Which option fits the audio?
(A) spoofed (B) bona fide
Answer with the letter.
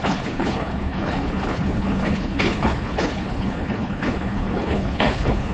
A